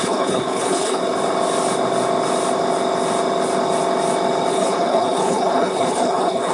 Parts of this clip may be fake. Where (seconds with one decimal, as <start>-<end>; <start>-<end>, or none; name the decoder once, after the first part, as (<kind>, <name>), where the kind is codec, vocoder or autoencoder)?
0.0-1.0 (codec, HILCodec); 4.5-6.5